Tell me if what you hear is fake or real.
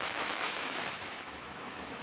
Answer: fake